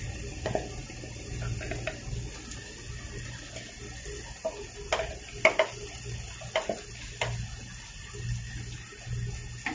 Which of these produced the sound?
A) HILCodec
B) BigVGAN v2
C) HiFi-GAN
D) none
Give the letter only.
D